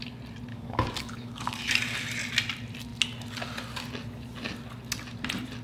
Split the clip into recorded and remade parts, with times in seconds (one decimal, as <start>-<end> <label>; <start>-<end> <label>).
0.0-0.5 recorded; 0.5-1.7 remade; 1.7-5.6 recorded